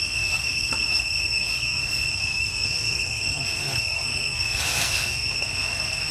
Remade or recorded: remade